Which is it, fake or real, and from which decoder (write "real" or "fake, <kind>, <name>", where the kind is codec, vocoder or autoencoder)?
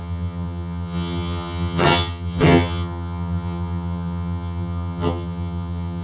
fake, vocoder, HiFi-GAN